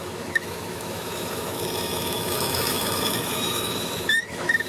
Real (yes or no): no